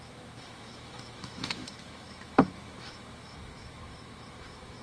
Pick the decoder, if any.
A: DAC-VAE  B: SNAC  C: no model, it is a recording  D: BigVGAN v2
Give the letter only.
A